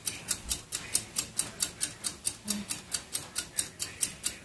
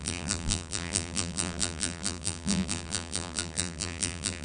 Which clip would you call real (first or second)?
first